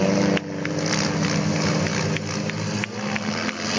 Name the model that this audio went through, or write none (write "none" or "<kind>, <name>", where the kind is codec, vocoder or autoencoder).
none